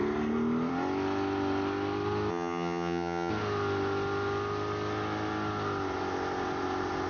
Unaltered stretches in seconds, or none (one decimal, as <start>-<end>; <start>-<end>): 0.0-2.3; 3.3-7.1